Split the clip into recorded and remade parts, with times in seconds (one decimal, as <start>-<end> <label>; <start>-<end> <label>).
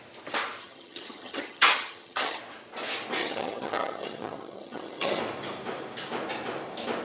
0.0-0.6 recorded; 0.6-2.4 remade; 2.4-3.2 recorded; 3.2-5.2 remade; 5.2-7.0 recorded